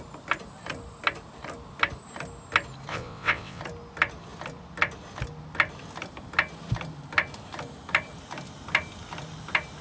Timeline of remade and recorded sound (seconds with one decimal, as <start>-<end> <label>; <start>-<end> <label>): 0.0-2.9 recorded; 2.9-3.6 remade; 3.6-9.8 recorded